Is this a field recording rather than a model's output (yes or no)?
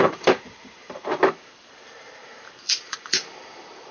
no